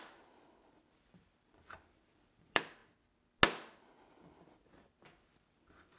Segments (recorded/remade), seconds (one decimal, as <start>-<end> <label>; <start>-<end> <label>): 0.0-2.8 remade; 2.8-4.0 recorded; 4.0-6.0 remade